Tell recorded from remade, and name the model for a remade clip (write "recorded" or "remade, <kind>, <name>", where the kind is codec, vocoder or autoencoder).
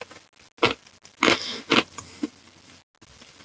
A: recorded